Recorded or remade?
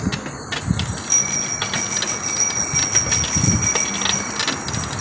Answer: recorded